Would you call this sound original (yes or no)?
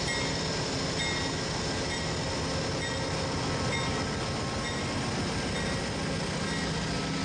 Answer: yes